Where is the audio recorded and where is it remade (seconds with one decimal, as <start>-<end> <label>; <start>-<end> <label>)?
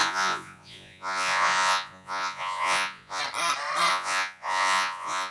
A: 0.0-3.2 remade; 3.2-3.9 recorded; 3.9-5.3 remade